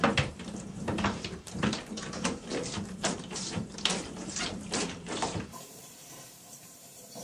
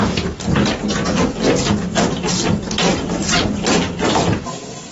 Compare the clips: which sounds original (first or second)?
second